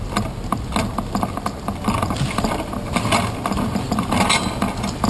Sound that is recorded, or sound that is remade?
recorded